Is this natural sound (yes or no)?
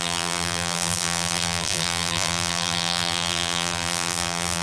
no